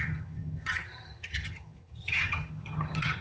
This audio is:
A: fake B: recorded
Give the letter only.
A